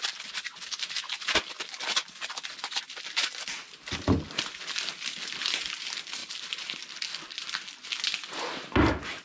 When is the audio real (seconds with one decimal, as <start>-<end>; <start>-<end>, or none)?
0.0-6.2; 7.3-9.2